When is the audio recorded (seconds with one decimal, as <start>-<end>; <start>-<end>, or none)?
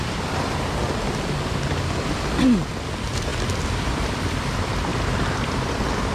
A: 0.8-2.7